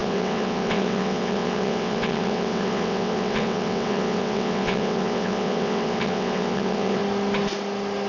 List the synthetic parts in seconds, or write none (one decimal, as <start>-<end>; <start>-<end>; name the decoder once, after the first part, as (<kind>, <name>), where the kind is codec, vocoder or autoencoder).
0.0-7.0 (vocoder, WaveNeXt)